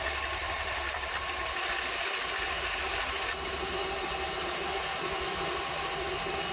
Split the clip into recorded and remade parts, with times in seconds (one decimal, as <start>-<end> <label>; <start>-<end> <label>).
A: 0.0-0.4 recorded; 0.4-1.4 remade; 1.4-6.5 recorded

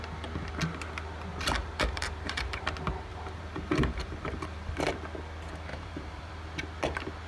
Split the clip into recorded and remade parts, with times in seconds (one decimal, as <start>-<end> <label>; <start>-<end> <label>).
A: 0.0-1.3 recorded; 1.3-2.6 remade; 2.6-3.1 recorded; 3.1-4.7 remade; 4.7-5.7 recorded; 5.7-6.3 remade; 6.3-7.3 recorded

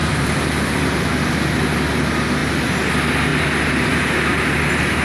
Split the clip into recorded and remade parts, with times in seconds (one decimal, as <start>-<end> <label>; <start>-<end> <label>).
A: 0.0-0.8 remade; 0.8-5.0 recorded